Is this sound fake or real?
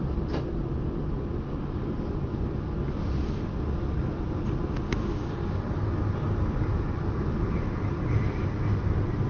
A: real